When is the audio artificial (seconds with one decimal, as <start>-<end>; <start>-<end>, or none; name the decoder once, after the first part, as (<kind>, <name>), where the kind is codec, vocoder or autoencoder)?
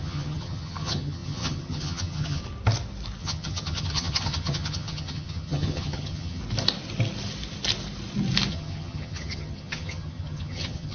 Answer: 0.0-2.4 (vocoder, HiFi-GAN); 3.2-6.4; 8.5-10.9